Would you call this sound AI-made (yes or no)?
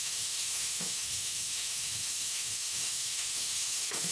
yes